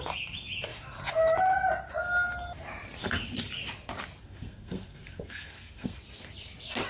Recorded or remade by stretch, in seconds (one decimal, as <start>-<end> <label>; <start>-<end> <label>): 0.0-4.2 recorded; 4.2-6.0 remade; 6.0-6.9 recorded